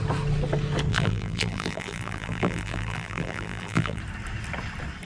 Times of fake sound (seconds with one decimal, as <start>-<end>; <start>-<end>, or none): 0.9-4.0